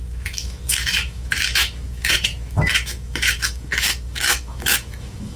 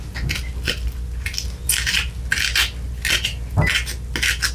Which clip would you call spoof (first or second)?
first